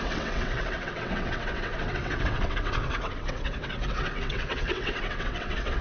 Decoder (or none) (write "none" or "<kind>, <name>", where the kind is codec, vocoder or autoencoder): vocoder, WaveNeXt